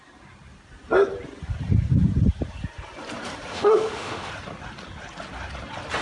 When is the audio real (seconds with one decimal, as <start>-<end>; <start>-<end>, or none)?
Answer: 0.0-3.5; 4.3-6.0